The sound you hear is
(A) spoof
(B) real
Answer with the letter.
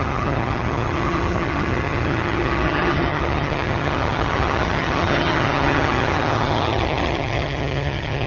A